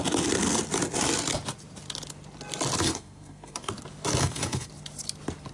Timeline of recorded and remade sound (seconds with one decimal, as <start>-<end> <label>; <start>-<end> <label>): 0.0-2.8 recorded; 2.8-3.7 remade; 3.7-4.2 recorded; 4.2-4.7 remade; 4.7-5.5 recorded